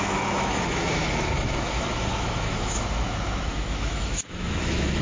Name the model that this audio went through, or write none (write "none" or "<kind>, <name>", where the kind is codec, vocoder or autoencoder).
autoencoder, DAC-VAE